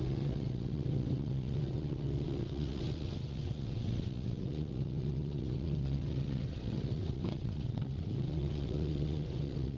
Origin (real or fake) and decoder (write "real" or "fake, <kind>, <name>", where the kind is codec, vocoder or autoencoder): fake, vocoder, WaveNeXt